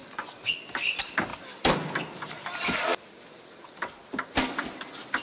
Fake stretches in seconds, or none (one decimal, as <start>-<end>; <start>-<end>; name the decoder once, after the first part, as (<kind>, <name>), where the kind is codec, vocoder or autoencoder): none